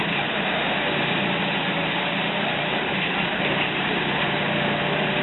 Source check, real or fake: fake